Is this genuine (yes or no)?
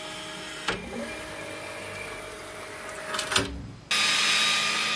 yes